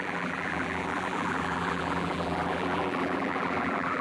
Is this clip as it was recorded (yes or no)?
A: no